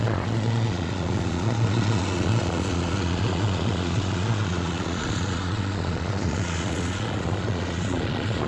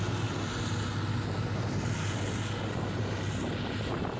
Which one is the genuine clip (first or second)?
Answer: second